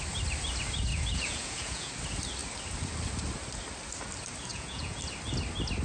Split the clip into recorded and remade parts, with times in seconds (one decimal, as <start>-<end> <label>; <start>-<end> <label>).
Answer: 0.0-0.9 recorded; 0.9-1.9 remade; 1.9-4.5 recorded; 4.5-5.0 remade; 5.0-5.8 recorded